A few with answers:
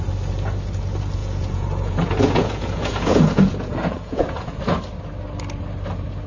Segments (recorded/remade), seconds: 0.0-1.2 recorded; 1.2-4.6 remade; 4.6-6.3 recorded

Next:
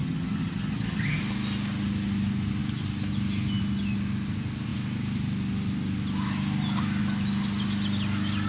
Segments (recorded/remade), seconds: 0.0-1.2 remade; 1.2-8.5 recorded

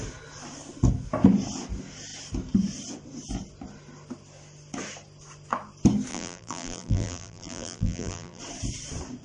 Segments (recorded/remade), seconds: 0.0-6.1 recorded; 6.1-8.4 remade; 8.4-9.2 recorded

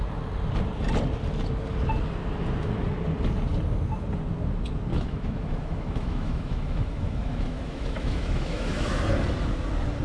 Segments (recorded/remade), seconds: 0.0-4.9 recorded; 4.9-9.0 remade; 9.0-10.0 recorded